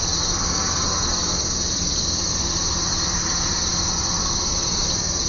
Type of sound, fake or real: real